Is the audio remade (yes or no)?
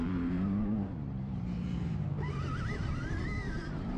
yes